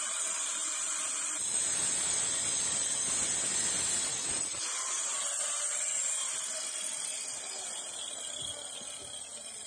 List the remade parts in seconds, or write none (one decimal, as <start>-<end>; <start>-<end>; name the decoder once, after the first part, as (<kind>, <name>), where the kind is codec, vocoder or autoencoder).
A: none